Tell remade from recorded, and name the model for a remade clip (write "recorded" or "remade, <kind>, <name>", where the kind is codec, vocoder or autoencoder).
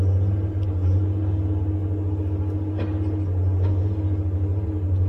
recorded